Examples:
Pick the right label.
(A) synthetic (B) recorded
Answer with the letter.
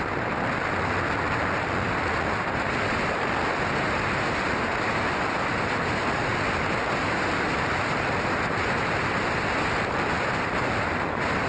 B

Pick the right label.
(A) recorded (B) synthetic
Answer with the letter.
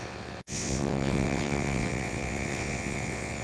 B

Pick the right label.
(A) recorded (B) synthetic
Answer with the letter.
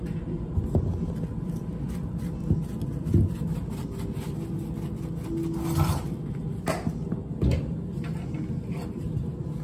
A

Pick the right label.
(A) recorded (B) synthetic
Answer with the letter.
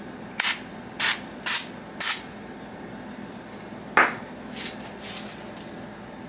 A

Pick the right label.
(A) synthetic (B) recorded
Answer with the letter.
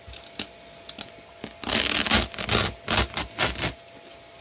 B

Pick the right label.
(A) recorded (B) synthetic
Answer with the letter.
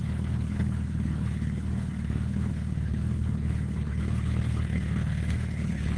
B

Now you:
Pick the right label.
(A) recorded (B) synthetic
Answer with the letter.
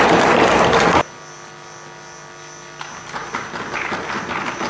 A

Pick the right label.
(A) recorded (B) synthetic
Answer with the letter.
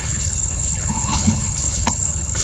B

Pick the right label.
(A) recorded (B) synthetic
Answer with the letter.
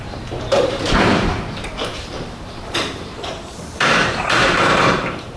B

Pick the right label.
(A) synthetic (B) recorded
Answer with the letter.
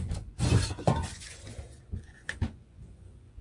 A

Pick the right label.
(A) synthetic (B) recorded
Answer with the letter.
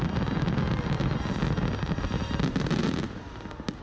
B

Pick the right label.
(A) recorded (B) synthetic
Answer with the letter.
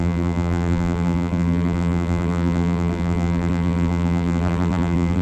B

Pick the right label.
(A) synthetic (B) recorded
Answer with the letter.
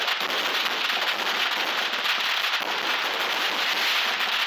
B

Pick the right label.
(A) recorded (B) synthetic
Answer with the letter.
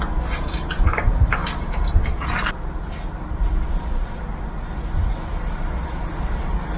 A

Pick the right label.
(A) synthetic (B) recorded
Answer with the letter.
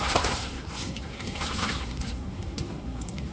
A